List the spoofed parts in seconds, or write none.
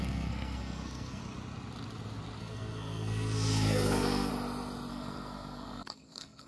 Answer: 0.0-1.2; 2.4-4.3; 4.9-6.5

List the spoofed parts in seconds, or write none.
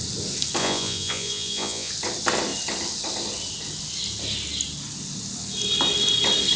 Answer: 0.6-1.9